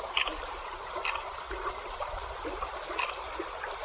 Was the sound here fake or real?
real